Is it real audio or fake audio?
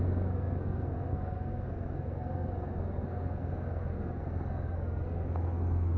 fake